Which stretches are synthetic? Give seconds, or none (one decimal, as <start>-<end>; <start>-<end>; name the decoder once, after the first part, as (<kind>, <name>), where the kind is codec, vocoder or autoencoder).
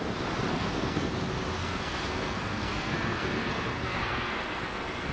0.5-1.1 (codec, SNAC); 1.6-5.1